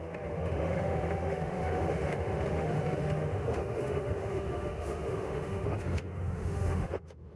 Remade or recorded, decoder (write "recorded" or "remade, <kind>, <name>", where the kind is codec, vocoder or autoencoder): remade, autoencoder, DAC-VAE